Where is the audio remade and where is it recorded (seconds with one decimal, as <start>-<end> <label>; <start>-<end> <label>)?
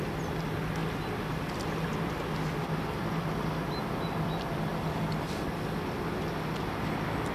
0.0-7.3 recorded